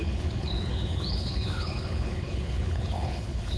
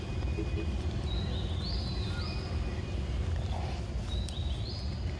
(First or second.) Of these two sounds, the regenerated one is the first